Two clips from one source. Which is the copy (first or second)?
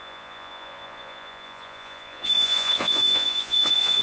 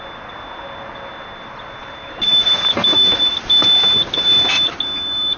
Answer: first